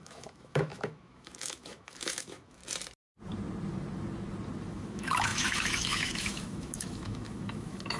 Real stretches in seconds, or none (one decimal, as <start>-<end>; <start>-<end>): 2.6-4.7